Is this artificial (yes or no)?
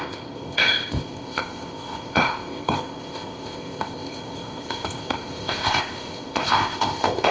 yes